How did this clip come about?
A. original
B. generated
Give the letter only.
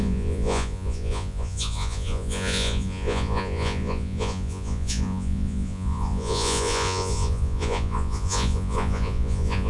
B